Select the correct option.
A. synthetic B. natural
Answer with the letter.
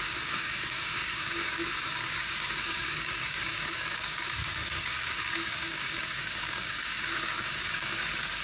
A